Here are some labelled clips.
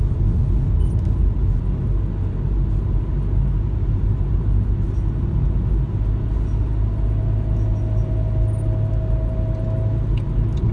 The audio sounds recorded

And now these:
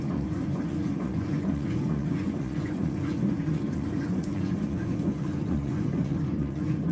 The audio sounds remade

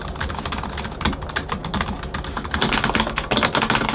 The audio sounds recorded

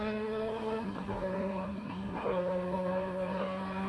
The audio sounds remade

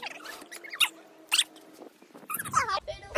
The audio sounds recorded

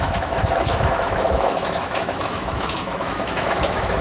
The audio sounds remade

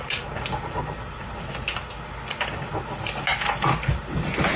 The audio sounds recorded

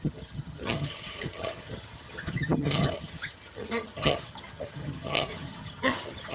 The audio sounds remade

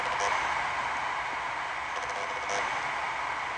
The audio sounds recorded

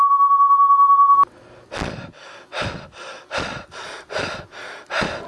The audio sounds recorded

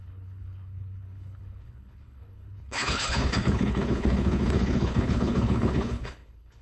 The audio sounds remade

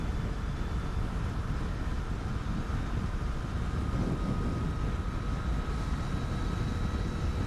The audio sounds recorded